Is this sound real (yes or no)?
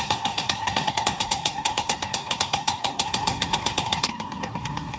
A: no